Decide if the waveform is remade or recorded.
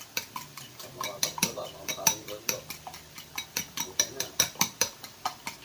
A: remade